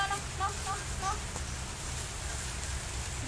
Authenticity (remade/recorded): recorded